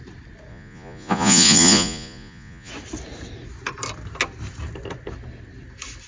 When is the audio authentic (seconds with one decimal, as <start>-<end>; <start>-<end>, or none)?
0.0-0.5; 2.7-6.1